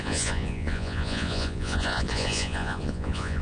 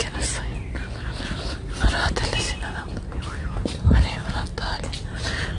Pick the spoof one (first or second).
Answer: first